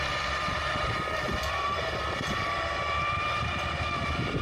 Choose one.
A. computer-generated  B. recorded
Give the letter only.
A